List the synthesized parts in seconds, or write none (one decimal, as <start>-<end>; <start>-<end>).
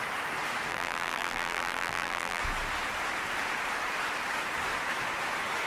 0.7-2.4